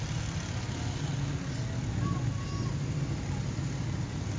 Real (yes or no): yes